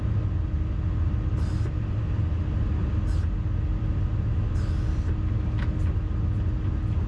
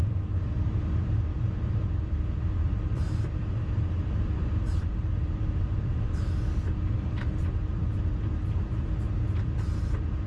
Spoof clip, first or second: second